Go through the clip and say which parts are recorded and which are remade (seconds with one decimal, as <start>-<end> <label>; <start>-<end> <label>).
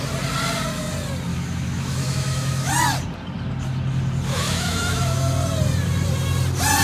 0.0-1.3 recorded; 1.3-2.7 remade; 2.7-4.3 recorded; 4.3-5.3 remade; 5.3-6.8 recorded